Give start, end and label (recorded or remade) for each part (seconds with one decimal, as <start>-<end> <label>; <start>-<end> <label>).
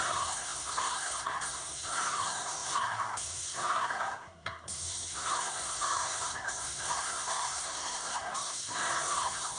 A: 0.0-9.6 remade